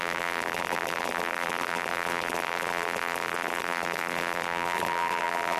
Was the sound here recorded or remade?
remade